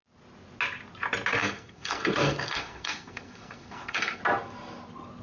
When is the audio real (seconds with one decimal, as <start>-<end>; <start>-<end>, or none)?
0.0-1.4; 4.2-5.2